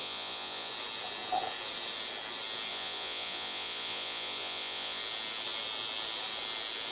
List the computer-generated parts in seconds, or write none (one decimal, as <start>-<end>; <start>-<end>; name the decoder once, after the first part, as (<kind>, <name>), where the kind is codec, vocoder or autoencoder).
0.0-0.7 (vocoder, Vocos); 2.7-5.0